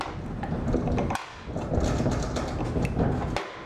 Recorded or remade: recorded